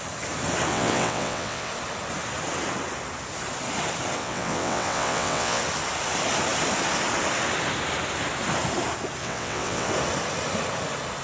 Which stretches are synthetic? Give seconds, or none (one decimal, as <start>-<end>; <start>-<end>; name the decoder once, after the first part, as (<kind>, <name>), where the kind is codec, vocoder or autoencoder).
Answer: 0.7-1.7 (vocoder, WaveNeXt); 4.2-5.6; 9.2-9.9